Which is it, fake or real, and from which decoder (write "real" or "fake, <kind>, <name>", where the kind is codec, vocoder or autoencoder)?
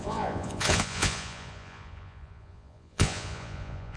fake, vocoder, Vocos